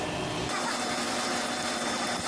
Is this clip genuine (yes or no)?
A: yes